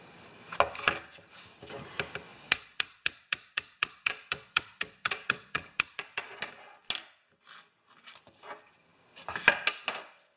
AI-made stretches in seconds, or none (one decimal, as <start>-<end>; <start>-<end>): 2.3-6.5